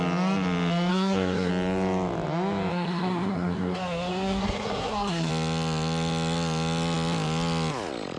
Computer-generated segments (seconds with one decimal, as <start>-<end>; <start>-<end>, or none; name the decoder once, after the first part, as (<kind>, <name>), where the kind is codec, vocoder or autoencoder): 0.9-1.5 (codec, SNAC); 2.7-5.3